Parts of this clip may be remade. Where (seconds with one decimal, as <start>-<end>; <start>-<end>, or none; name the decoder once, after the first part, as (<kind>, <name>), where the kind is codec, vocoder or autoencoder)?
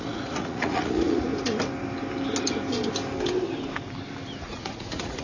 0.0-1.3 (vocoder, Vocos); 4.4-5.2